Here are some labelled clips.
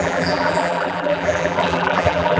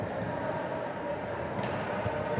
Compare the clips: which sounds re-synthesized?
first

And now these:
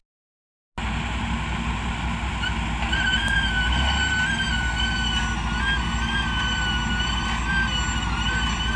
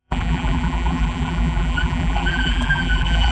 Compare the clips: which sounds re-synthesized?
second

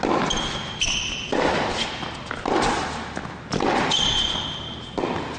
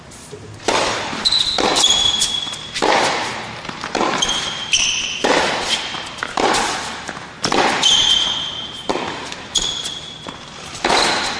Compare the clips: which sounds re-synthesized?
second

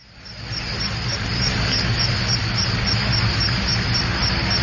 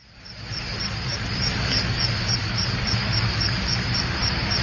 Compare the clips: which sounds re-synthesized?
second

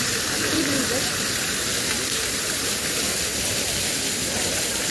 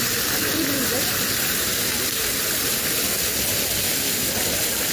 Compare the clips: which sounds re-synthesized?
first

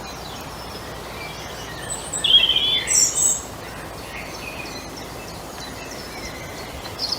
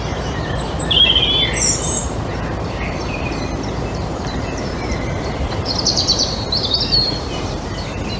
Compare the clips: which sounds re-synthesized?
second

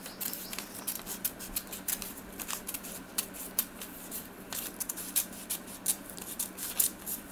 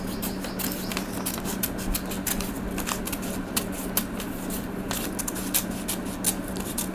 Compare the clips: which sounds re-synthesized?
first